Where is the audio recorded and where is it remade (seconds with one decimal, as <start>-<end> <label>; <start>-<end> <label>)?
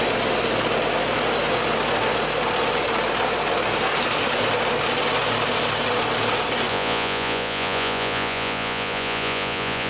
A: 0.0-6.7 recorded; 6.7-9.9 remade